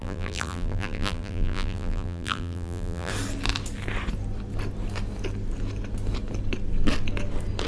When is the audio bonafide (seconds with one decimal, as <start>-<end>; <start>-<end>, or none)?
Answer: 3.1-7.7